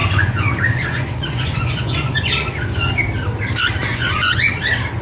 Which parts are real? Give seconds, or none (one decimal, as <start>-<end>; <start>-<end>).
3.0-3.9; 4.6-5.0